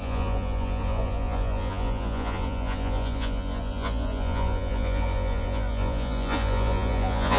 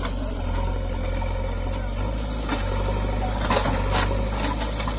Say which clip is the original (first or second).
second